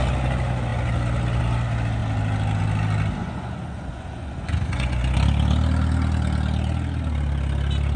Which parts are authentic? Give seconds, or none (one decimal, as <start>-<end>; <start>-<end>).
0.0-3.2; 5.0-8.0